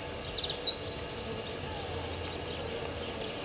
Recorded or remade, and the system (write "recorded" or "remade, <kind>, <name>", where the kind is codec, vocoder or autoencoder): recorded